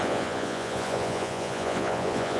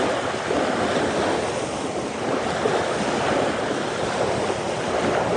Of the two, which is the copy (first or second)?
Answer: first